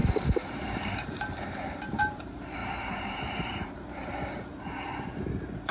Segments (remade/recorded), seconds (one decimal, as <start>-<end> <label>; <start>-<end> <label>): 0.0-5.7 remade